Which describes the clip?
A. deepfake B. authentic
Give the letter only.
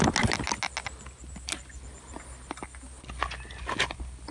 B